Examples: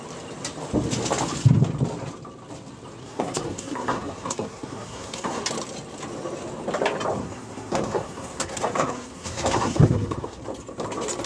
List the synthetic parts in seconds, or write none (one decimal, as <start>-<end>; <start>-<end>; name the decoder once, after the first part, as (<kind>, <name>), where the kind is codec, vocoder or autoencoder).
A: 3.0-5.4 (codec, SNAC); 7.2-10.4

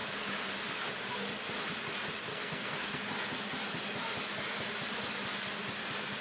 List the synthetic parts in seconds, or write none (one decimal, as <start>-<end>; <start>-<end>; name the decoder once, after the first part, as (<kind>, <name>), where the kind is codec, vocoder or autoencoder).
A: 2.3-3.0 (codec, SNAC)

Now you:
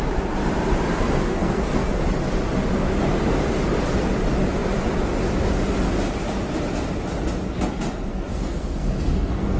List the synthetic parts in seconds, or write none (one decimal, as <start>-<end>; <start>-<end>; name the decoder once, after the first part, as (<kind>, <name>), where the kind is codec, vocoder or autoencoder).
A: 1.3-2.0 (codec, SNAC); 8.1-9.6

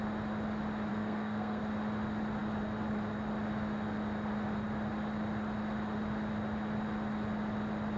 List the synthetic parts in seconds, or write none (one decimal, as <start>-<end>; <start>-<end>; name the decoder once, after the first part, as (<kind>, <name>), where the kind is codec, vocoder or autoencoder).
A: 0.9-1.6 (codec, SNAC)

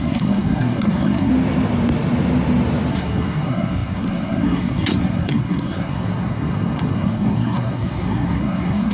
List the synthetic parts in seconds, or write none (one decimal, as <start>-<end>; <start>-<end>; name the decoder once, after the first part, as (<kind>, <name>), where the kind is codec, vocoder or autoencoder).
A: 0.0-1.3 (codec, SNAC); 2.9-8.9